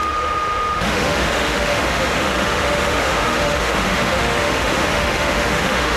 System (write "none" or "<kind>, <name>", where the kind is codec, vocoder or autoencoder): autoencoder, DAC-VAE